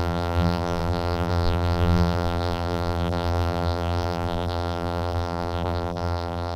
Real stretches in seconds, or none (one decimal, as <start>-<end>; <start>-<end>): none